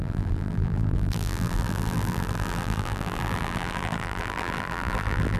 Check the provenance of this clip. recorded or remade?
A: remade